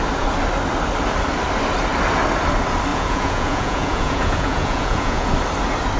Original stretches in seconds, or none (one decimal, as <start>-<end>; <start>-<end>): 0.0-2.9; 5.3-6.0